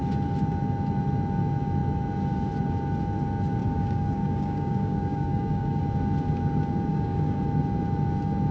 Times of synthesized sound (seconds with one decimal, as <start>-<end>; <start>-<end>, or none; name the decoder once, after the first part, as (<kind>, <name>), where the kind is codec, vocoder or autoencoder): 3.6-5.8 (codec, DAC); 6.9-7.4